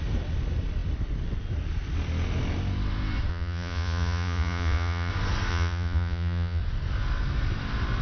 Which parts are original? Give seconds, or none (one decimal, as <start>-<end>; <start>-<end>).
0.0-3.3; 5.1-5.5; 6.6-8.0